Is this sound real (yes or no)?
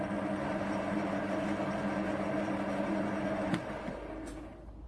no